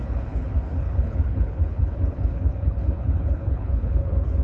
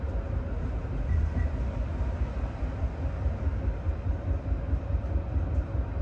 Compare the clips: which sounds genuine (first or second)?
second